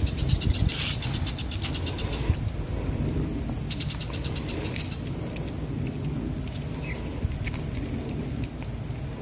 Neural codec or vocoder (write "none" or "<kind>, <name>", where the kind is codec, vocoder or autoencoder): none